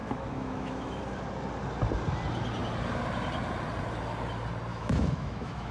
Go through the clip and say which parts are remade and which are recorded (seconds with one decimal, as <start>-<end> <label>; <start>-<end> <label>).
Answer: 0.0-1.0 remade; 1.0-4.7 recorded; 4.7-5.7 remade